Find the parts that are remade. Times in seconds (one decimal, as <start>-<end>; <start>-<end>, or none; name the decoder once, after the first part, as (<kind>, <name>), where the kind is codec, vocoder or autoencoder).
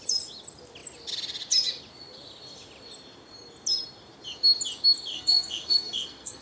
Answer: 5.1-6.4 (codec, SNAC)